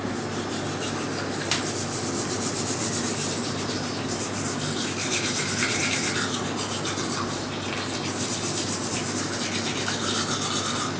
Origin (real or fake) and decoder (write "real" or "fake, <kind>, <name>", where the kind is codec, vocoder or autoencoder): real